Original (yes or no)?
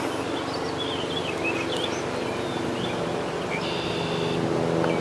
yes